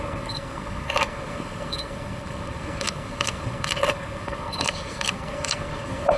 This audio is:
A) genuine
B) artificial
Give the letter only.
B